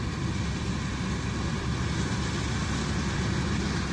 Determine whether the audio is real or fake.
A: real